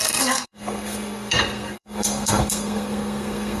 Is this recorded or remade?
remade